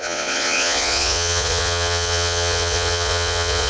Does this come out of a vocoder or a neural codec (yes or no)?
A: yes